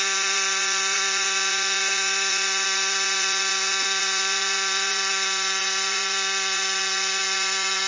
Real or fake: fake